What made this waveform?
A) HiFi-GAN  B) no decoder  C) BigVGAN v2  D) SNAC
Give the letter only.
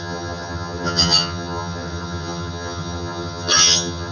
A